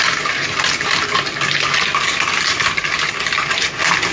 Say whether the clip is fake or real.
real